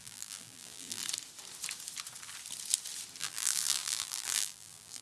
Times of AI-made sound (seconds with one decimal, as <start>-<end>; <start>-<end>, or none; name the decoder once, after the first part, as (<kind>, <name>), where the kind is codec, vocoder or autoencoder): 0.0-1.0 (vocoder, BigVGAN v2); 3.2-5.0